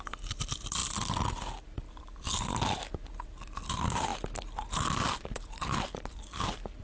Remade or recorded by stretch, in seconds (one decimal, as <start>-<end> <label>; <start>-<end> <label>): 0.0-0.8 remade; 0.8-1.3 recorded; 1.3-4.1 remade; 4.1-5.3 recorded; 5.3-6.8 remade